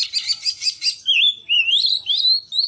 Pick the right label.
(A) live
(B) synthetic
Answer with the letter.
A